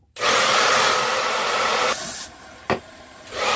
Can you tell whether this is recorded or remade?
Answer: remade